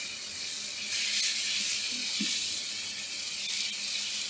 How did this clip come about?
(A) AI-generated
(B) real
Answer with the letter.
B